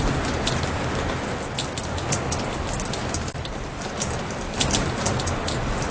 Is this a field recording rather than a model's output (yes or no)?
yes